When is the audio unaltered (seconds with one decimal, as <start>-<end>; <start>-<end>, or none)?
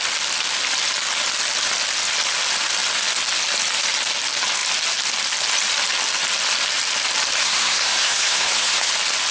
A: 0.0-7.4; 8.9-9.3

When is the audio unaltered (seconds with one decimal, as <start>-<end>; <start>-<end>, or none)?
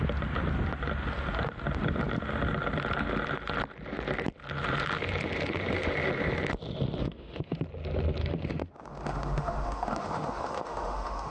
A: 0.0-7.0; 7.6-8.2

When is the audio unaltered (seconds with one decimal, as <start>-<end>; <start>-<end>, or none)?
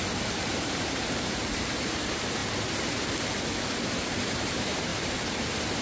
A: 2.4-3.9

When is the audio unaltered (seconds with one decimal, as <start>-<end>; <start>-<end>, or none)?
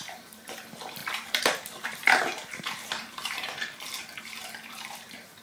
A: none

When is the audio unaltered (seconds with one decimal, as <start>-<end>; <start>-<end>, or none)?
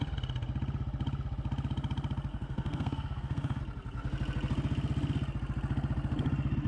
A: 0.0-2.3; 3.6-6.7